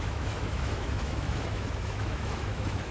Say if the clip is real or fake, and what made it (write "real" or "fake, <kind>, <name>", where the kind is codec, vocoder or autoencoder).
fake, autoencoder, DAC-VAE